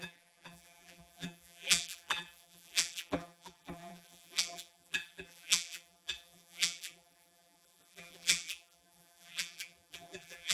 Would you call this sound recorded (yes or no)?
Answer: no